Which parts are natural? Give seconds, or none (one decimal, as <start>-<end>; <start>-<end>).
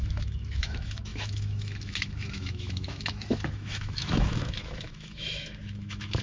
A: none